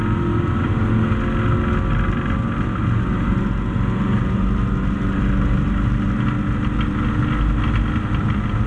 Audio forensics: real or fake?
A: real